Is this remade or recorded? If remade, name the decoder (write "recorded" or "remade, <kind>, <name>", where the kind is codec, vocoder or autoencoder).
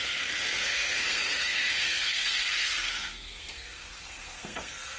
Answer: remade, codec, SNAC